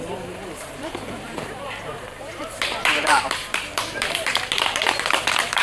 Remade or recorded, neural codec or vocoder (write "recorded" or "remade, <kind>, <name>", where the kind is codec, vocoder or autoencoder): remade, vocoder, BigVGAN v2